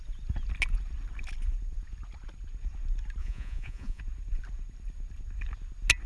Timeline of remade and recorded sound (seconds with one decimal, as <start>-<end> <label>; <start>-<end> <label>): 0.0-3.2 recorded; 3.2-4.0 remade; 4.0-6.1 recorded